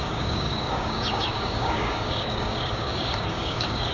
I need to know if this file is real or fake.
fake